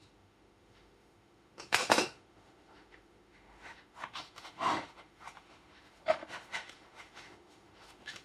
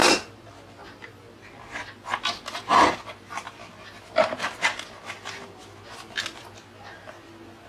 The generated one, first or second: first